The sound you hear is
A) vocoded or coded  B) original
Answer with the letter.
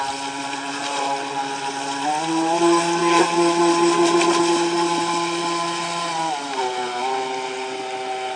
B